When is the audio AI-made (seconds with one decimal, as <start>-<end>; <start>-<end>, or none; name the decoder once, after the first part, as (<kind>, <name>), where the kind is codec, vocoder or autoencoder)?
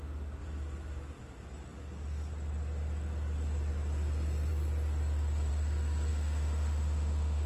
6.1-7.5 (autoencoder, DAC-VAE)